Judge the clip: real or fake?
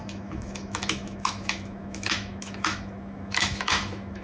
fake